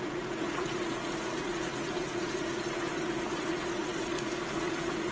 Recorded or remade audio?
remade